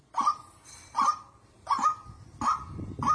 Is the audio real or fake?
fake